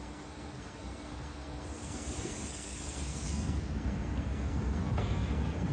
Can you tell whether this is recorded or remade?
remade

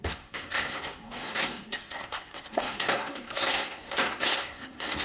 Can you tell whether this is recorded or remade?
remade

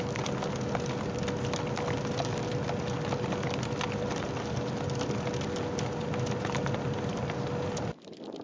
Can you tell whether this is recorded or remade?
recorded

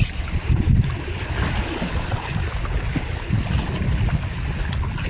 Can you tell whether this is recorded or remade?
recorded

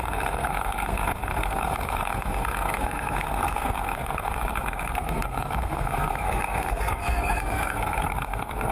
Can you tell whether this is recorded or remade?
remade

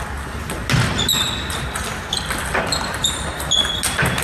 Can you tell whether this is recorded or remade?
recorded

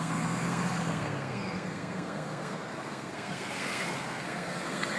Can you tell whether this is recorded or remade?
remade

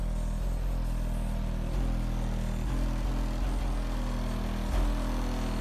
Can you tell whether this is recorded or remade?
recorded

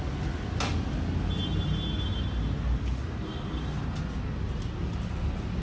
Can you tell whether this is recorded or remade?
recorded